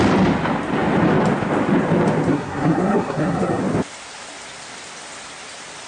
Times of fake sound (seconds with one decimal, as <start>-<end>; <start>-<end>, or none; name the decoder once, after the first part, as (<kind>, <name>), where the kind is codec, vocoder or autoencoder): 2.3-3.6 (codec, SNAC)